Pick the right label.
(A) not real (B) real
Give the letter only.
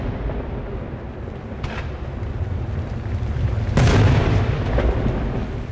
B